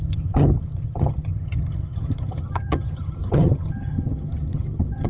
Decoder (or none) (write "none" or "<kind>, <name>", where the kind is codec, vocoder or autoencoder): vocoder, HiFi-GAN